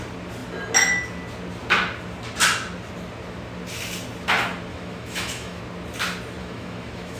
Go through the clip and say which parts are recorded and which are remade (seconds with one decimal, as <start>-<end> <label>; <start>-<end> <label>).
0.0-4.7 recorded; 4.7-5.6 remade; 5.6-6.4 recorded; 6.4-7.2 remade